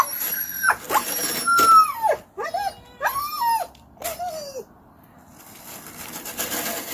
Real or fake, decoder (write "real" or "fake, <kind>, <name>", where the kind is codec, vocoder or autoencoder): real